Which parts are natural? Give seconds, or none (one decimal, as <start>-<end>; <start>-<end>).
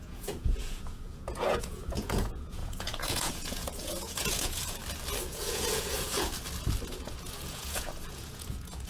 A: 4.8-5.3; 6.3-6.9